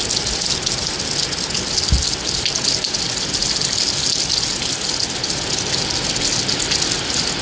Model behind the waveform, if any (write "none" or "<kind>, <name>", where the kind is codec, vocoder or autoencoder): none